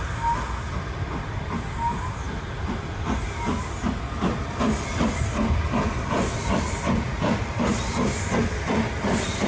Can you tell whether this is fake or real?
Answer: real